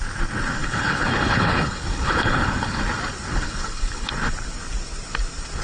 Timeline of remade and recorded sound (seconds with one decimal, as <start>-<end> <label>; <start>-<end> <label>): 0.0-0.6 recorded; 0.6-2.8 remade; 2.8-3.3 recorded; 3.3-4.1 remade; 4.1-5.6 recorded